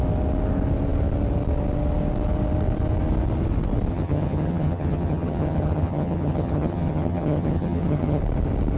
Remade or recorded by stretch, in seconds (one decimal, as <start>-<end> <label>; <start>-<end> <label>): 0.0-3.9 recorded; 3.9-8.2 remade; 8.2-8.8 recorded